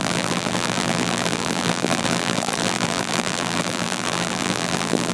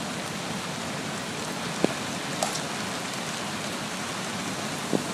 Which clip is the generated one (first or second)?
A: first